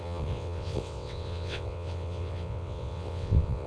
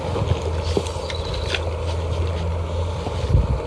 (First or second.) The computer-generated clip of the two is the first